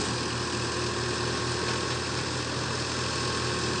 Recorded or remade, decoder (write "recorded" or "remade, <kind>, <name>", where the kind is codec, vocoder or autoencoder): recorded